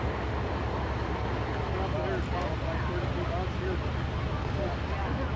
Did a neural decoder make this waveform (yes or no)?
no